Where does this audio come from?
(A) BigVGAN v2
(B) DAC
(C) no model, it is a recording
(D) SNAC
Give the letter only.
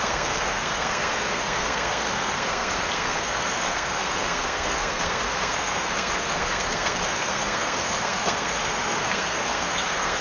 D